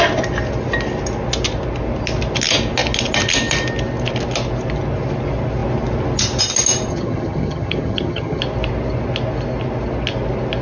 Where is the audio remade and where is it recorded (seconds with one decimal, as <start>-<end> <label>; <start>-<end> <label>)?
0.0-6.9 recorded; 6.9-8.4 remade; 8.4-10.6 recorded